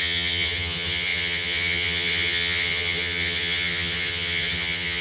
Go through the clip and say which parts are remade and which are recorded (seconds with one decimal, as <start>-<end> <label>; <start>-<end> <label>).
0.0-5.0 remade